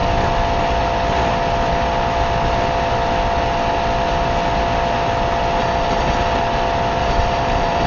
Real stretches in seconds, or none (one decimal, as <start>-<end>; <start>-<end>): 0.0-5.6; 6.3-7.0